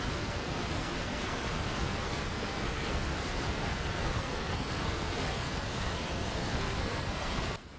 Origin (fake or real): fake